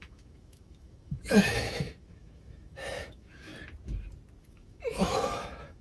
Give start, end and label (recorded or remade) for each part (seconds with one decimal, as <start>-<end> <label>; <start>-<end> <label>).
0.0-3.5 remade; 3.5-4.4 recorded; 4.4-5.8 remade